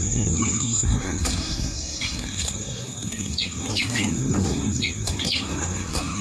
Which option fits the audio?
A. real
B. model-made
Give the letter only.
B